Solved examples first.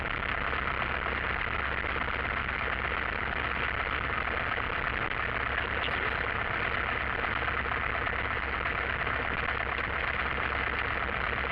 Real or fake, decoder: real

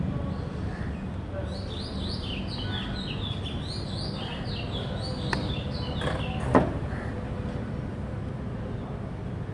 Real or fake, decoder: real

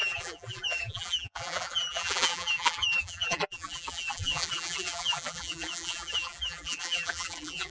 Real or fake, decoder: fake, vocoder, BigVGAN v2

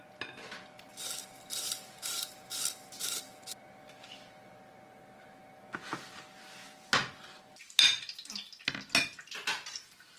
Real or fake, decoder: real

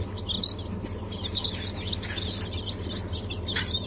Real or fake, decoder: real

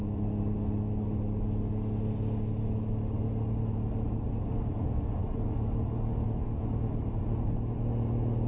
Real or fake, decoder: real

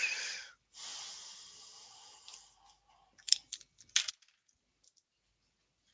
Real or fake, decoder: real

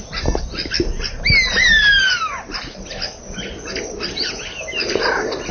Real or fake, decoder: real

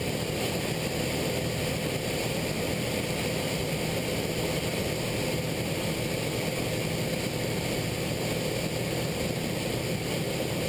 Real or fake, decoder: fake, vocoder, BigVGAN v2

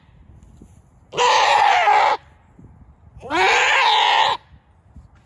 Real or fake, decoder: real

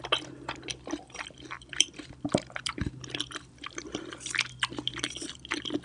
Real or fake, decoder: real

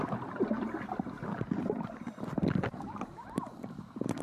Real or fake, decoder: real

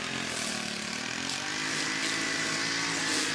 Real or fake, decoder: real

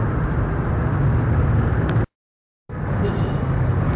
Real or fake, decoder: real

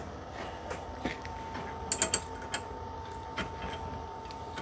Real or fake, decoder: real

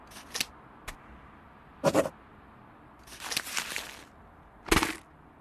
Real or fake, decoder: real